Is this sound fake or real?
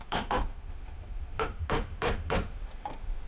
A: fake